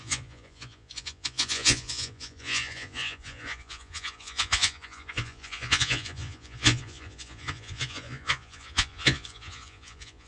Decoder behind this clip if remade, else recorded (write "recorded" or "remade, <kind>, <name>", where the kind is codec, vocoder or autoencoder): remade, vocoder, Vocos